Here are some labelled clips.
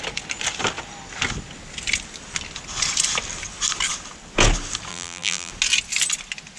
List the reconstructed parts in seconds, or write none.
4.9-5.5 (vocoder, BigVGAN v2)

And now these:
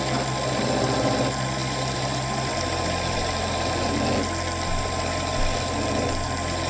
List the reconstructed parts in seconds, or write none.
none

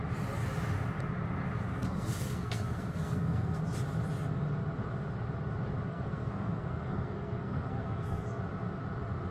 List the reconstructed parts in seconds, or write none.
1.7-3.6 (codec, SNAC); 5.9-8.4

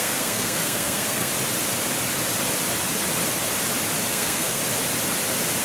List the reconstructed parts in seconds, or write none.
0.0-1.3 (codec, SNAC); 4.1-4.6

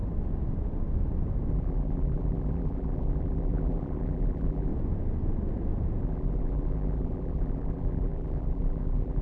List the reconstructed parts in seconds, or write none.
1.5-4.7 (vocoder, BigVGAN v2); 6.0-9.2

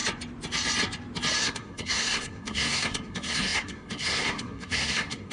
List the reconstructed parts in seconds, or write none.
1.4-5.3 (codec, SNAC)

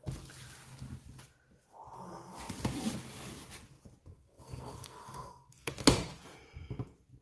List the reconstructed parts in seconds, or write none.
4.1-5.7 (codec, SNAC)

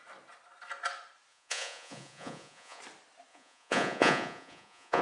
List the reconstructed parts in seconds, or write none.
1.3-2.8 (vocoder, Vocos); 3.3-5.0